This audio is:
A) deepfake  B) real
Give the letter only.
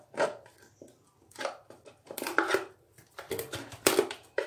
A